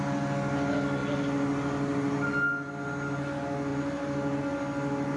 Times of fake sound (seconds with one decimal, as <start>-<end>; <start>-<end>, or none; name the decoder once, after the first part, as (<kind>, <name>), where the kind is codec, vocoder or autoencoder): none